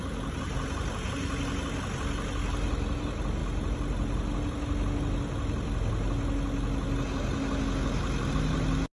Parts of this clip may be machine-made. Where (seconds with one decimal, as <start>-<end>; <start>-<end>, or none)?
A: none

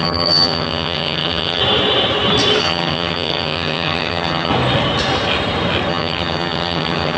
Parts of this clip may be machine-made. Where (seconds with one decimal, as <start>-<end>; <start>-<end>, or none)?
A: 0.0-1.6; 2.6-4.5; 5.9-7.2

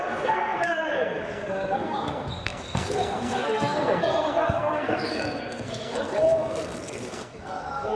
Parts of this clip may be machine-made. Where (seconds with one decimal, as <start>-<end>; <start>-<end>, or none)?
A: 0.0-8.0

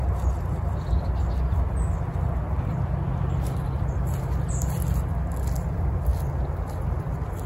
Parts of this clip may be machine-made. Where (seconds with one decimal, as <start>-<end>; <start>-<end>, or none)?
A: none

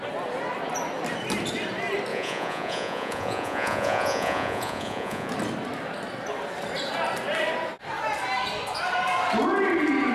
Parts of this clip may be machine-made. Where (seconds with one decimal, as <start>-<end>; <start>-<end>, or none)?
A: 2.1-5.3

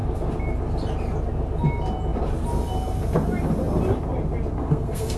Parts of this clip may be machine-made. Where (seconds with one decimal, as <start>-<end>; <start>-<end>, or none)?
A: 4.6-5.2

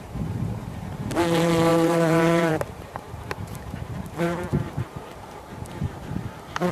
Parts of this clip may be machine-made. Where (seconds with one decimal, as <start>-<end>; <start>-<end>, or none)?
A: 0.0-0.6; 1.1-6.7